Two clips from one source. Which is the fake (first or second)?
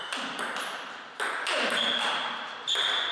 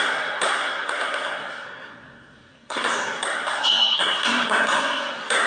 second